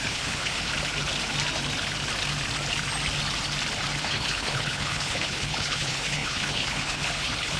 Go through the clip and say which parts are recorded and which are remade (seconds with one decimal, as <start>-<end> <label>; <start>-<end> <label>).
0.0-0.7 remade; 0.7-4.0 recorded; 4.0-7.6 remade